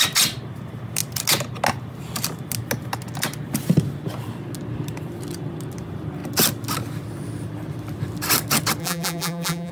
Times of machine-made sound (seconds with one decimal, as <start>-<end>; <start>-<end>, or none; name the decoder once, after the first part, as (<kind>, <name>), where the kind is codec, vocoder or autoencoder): 8.8-9.7 (vocoder, BigVGAN v2)